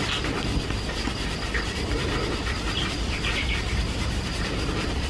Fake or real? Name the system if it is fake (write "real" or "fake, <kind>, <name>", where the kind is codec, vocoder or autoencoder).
real